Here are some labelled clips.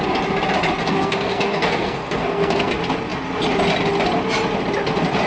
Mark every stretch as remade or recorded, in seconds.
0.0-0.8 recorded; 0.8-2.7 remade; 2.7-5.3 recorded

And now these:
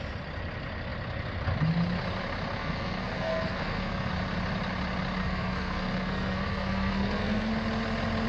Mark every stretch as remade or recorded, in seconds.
0.0-2.6 recorded; 2.6-4.1 remade; 4.1-5.2 recorded; 5.2-7.5 remade; 7.5-8.3 recorded

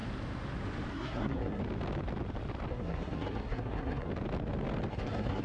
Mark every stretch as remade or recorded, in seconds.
0.0-0.9 recorded; 0.9-1.6 remade; 1.6-2.7 recorded; 2.7-4.1 remade; 4.1-4.9 recorded; 4.9-5.4 remade